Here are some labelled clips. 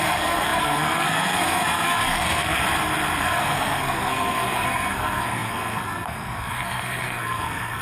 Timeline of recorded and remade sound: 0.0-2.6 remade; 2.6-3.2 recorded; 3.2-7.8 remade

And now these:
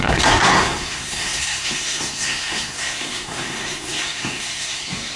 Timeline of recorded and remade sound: 0.0-5.2 remade

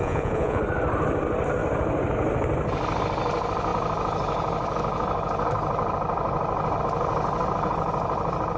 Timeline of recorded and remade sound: 0.0-0.6 remade; 0.6-8.6 recorded

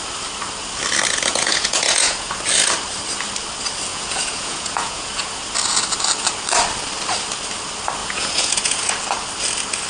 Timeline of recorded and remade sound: 0.0-1.3 recorded; 1.3-2.3 remade; 2.3-3.9 recorded; 3.9-5.4 remade; 5.4-8.0 recorded; 8.0-8.9 remade; 8.9-9.9 recorded

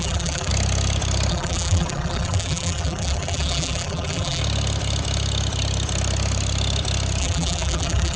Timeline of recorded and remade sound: 0.0-0.5 remade; 0.5-1.3 recorded; 1.3-4.4 remade; 4.4-7.2 recorded; 7.2-8.2 remade

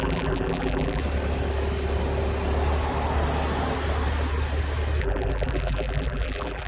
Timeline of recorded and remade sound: 0.0-1.0 remade; 1.0-5.0 recorded; 5.0-6.7 remade

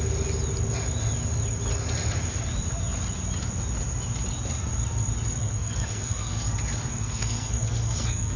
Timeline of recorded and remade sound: 0.0-5.4 recorded; 5.4-6.4 remade; 6.4-6.9 recorded; 6.9-8.4 remade